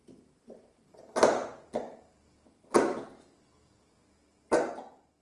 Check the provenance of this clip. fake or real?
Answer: real